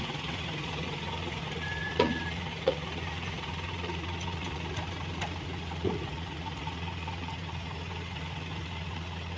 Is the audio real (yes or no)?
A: no